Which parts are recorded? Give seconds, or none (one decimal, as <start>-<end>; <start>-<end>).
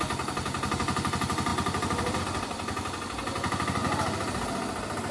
0.0-5.1